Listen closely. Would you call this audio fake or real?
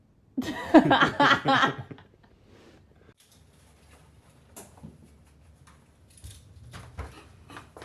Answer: real